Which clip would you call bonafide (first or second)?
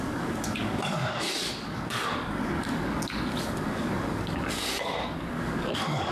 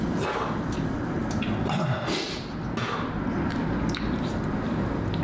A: second